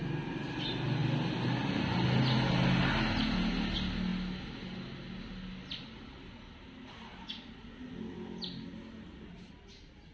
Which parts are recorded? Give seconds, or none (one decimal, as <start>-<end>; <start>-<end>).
0.0-10.1